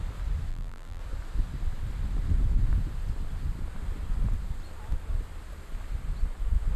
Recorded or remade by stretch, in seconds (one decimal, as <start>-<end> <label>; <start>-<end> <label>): 0.0-0.5 recorded; 0.5-1.0 remade; 1.0-6.8 recorded